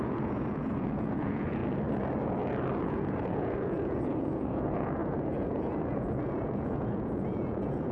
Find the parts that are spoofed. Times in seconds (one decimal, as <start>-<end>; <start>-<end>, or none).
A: 0.0-1.6; 2.8-7.9